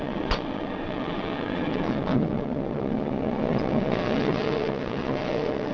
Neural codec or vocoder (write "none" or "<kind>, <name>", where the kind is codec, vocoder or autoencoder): vocoder, WaveNeXt